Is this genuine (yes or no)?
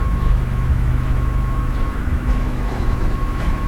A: no